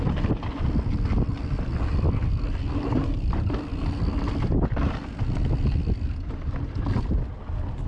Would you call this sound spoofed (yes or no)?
no